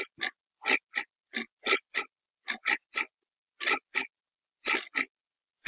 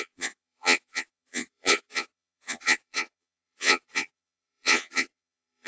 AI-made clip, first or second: second